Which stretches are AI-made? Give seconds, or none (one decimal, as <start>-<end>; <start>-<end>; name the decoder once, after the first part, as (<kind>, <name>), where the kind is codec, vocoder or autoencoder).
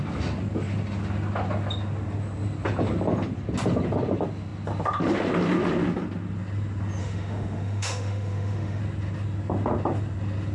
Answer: 7.0-8.8 (autoencoder, DAC-VAE)